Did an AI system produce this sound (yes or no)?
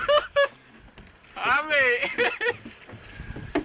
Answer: no